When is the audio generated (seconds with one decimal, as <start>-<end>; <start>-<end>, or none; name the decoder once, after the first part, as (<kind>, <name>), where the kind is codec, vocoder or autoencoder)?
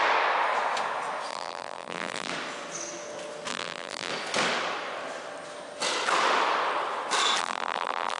1.3-2.3 (vocoder, BigVGAN v2); 3.5-4.1; 7.4-8.2